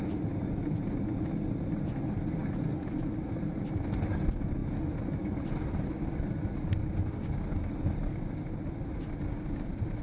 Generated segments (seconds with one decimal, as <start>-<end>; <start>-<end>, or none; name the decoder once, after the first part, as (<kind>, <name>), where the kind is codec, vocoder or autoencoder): none